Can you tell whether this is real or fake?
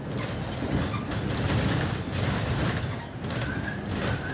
real